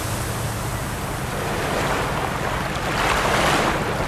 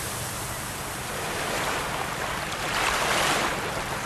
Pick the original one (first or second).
first